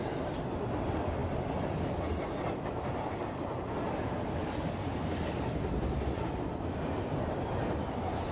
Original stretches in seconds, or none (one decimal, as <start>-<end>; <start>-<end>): 0.0-8.3